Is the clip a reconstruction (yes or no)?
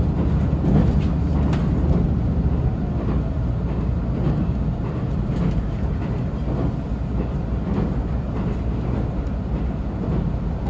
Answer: no